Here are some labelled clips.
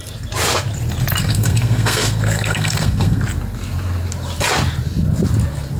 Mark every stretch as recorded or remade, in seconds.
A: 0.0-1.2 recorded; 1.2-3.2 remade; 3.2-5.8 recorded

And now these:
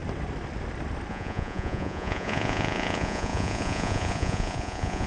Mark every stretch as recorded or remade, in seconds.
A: 0.0-1.1 recorded; 1.1-5.1 remade